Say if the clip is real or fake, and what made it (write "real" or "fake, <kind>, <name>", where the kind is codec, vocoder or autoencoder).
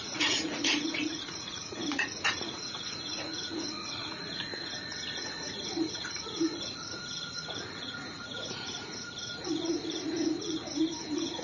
fake, vocoder, Vocos